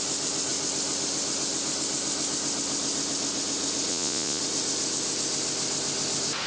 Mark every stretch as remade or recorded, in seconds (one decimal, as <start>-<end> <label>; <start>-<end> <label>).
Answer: 0.0-3.9 recorded; 3.9-4.4 remade; 4.4-6.5 recorded